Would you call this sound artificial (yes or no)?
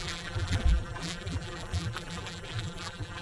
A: yes